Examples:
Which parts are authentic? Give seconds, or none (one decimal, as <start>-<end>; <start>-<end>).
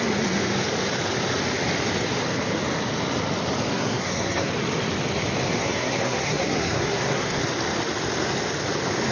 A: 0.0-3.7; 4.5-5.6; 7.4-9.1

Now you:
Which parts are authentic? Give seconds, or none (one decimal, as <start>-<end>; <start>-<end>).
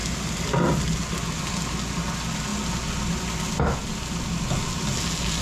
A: 0.0-5.4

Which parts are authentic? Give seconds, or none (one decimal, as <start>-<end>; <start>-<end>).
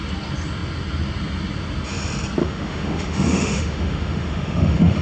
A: 0.0-2.4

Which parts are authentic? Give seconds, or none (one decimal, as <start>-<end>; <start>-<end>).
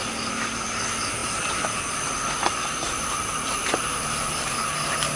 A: 0.0-5.2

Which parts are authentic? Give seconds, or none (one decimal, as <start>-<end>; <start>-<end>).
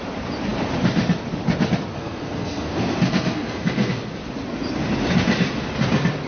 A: 0.0-1.9; 3.9-6.3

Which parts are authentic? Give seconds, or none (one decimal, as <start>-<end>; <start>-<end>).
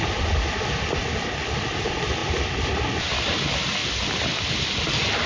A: 3.8-4.5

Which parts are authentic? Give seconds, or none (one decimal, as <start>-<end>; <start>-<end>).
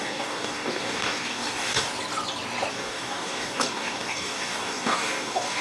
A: 1.9-2.7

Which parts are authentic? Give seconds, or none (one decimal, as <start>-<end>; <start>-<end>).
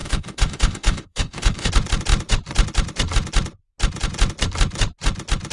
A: 1.7-5.5